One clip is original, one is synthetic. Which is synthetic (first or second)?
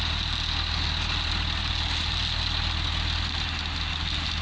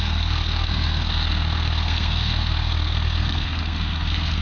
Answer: second